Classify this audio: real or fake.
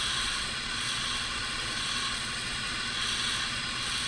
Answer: fake